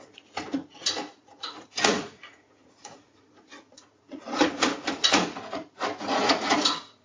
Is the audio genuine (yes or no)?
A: no